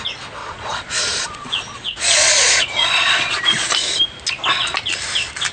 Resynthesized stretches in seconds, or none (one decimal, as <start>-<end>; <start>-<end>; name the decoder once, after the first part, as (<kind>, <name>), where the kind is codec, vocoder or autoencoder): 0.4-3.7 (vocoder, Vocos)